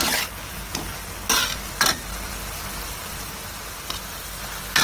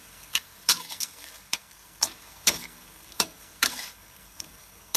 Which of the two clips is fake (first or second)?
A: second